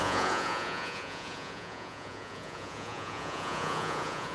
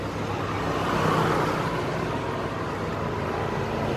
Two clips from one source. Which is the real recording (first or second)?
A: second